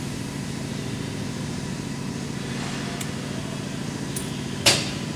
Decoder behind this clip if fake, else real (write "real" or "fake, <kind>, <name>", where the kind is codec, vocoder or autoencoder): real